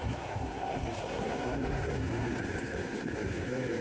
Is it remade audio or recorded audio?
remade